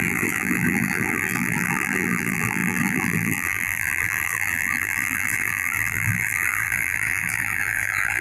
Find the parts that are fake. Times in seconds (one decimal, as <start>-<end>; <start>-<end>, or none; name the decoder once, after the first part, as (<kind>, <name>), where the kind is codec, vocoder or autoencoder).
0.0-8.2 (vocoder, BigVGAN v2)

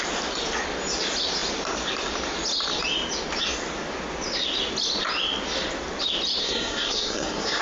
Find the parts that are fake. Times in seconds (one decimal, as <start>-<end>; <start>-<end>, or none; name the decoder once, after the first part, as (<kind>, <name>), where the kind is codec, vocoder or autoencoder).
6.4-7.6 (codec, SNAC)

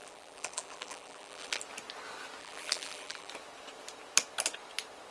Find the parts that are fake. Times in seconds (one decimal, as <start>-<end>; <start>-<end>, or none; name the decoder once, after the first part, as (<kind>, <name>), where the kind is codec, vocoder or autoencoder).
0.0-1.6 (vocoder, BigVGAN v2); 2.4-3.3